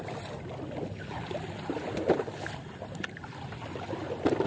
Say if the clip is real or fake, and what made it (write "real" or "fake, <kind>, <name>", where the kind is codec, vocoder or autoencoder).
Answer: fake, vocoder, BigVGAN v2